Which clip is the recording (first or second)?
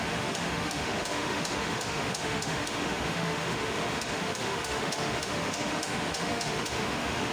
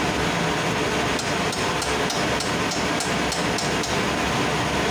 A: second